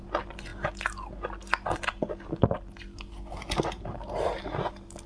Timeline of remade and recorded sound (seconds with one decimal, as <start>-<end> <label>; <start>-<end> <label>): 0.0-5.1 recorded